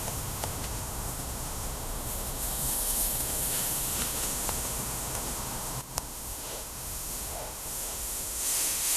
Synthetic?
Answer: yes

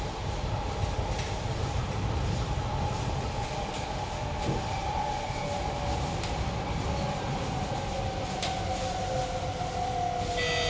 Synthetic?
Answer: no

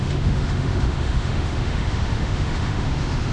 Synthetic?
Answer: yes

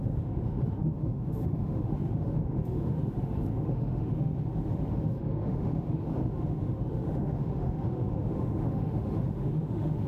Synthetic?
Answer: yes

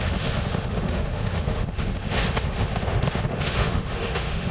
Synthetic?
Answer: yes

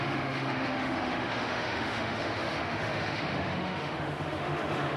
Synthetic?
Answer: yes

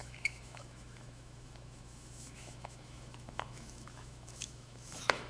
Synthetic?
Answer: yes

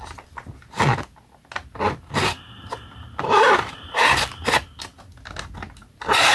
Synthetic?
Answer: no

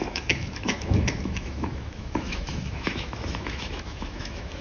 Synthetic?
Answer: yes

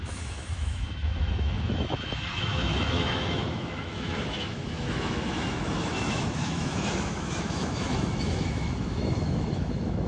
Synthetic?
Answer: yes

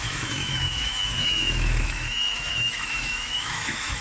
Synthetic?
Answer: yes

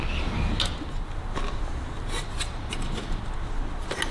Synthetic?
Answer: no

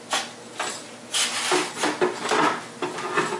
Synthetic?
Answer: no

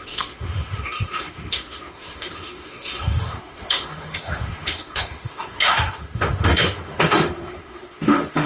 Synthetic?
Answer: yes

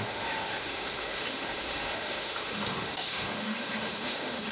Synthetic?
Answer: yes